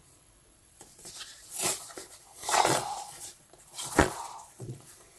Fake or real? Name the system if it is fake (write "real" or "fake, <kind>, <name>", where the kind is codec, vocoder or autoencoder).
fake, vocoder, Vocos